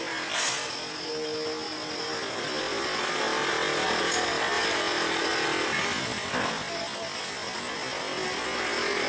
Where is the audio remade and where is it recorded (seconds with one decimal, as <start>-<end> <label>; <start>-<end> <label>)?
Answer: 0.0-9.1 recorded